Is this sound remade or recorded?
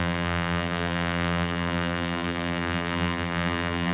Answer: remade